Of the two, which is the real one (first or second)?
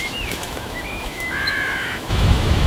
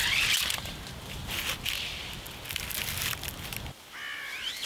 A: second